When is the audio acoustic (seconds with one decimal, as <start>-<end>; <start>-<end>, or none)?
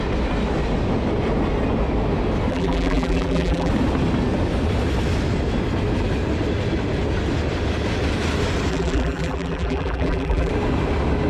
0.0-2.5; 3.7-8.7; 10.5-11.3